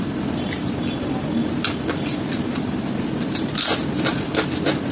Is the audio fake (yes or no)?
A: no